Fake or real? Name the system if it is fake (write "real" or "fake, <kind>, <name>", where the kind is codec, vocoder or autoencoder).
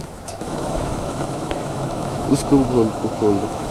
fake, autoencoder, DAC-VAE